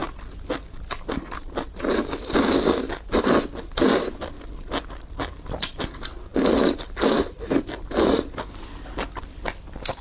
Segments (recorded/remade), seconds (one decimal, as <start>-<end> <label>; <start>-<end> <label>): 0.0-10.0 recorded